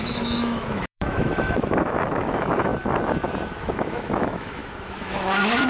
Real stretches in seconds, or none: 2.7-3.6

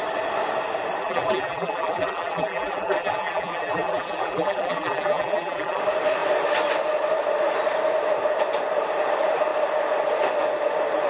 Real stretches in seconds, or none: 0.0-1.0; 5.8-11.1

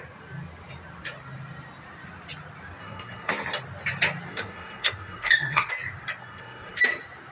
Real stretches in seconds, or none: 0.0-2.8; 3.3-4.3; 5.7-6.2; 6.8-7.3

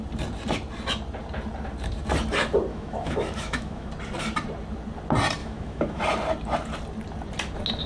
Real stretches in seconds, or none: 0.0-2.7; 3.9-5.4; 6.0-7.9

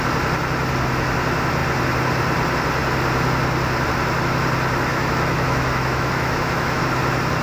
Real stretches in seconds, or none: 0.0-4.9; 6.8-7.4

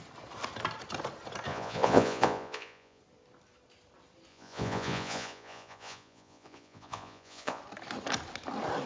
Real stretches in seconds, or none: 0.0-1.5; 3.0-4.3; 7.6-8.9